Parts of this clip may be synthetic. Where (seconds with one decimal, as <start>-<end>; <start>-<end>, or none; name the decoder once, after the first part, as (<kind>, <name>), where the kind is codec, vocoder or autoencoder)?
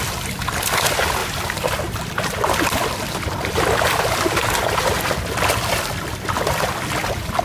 none